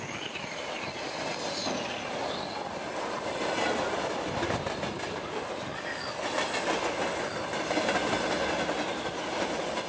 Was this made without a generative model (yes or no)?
yes